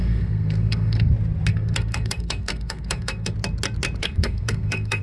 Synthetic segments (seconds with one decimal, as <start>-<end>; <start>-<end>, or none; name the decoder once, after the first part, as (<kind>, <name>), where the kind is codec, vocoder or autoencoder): 0.0-1.1 (codec, SNAC); 1.5-3.3; 4.0-5.0

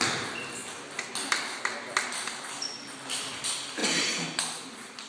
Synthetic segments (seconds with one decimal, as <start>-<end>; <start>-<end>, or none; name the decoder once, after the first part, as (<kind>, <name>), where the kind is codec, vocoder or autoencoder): none

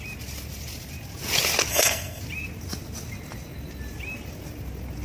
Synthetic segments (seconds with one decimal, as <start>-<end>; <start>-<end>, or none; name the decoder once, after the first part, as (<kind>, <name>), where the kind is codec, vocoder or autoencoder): 1.7-2.2 (codec, SNAC)